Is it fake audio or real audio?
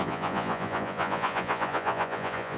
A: fake